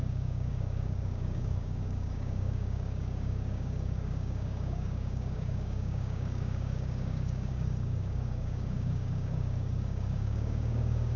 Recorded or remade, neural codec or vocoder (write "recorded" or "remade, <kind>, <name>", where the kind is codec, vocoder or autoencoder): remade, codec, DAC